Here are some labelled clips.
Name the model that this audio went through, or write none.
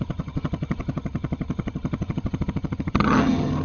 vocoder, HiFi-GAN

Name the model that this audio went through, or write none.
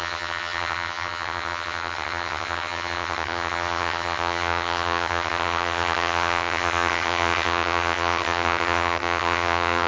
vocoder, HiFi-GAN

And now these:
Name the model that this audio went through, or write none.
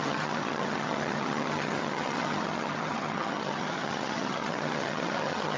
vocoder, HiFi-GAN